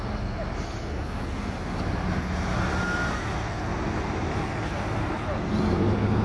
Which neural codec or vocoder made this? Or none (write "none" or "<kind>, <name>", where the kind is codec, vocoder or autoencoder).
none